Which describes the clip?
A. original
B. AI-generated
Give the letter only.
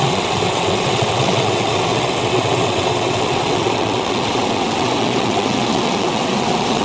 B